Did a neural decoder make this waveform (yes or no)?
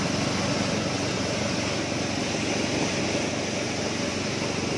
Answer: no